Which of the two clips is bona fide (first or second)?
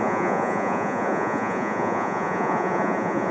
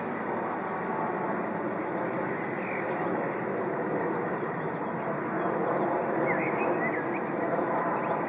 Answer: second